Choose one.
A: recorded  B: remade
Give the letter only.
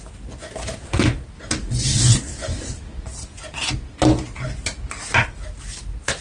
A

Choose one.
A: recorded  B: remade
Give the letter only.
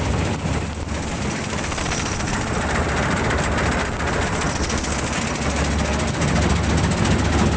A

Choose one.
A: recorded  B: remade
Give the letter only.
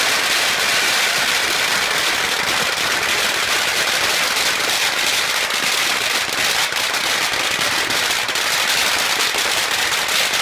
A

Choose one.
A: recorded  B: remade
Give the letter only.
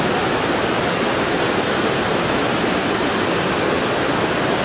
A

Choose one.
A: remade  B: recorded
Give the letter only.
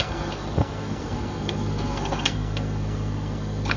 A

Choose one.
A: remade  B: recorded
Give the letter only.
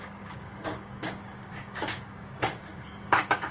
A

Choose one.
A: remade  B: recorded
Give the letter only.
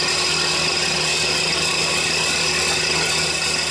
B